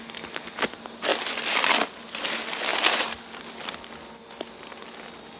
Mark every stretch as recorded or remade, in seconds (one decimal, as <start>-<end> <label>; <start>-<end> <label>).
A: 0.0-5.4 recorded